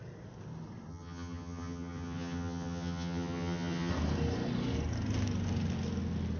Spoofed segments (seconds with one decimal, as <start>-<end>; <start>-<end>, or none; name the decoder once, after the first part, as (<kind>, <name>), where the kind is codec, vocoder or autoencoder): 0.9-3.9 (vocoder, HiFi-GAN)